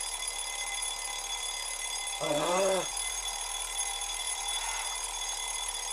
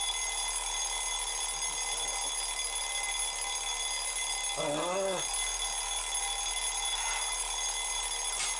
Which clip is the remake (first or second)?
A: first